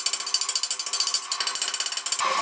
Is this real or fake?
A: real